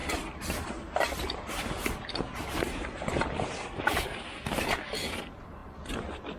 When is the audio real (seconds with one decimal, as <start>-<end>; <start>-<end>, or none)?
3.8-6.4